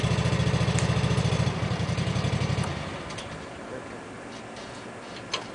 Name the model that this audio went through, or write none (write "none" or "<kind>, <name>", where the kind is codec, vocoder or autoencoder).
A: none